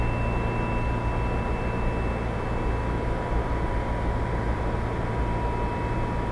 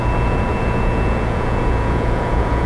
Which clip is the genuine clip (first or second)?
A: first